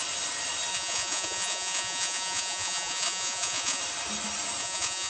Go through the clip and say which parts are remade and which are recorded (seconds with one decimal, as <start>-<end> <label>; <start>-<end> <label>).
0.0-0.7 recorded; 0.7-3.8 remade; 3.8-4.6 recorded; 4.6-5.1 remade